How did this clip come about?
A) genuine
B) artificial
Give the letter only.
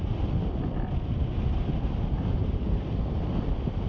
A